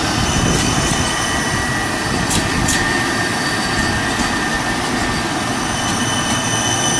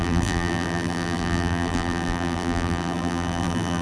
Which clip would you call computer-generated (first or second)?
second